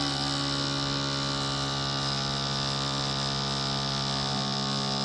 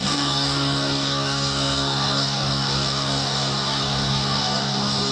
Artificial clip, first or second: second